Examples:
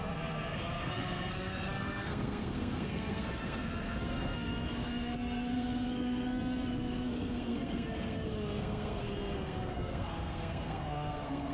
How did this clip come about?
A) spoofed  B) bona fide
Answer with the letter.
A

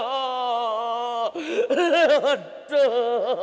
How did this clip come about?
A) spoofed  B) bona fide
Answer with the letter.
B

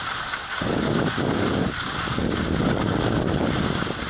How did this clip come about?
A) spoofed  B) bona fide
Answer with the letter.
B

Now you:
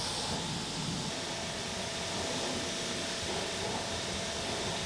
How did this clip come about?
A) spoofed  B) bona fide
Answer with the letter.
B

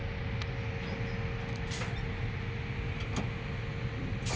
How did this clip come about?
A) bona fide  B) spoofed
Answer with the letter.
A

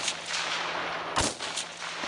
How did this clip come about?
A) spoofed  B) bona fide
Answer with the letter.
B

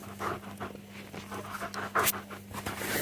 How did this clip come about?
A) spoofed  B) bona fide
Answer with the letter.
B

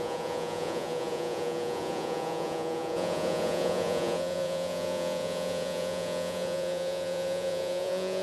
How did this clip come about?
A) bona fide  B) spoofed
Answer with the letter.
B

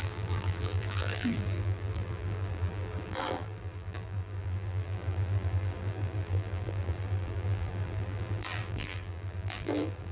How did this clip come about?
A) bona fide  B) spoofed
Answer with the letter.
B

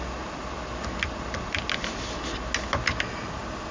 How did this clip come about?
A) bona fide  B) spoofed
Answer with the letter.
A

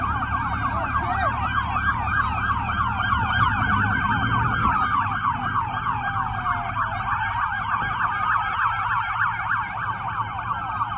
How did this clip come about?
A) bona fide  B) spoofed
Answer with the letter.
A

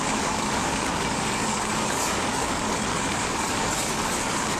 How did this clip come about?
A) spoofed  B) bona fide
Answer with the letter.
A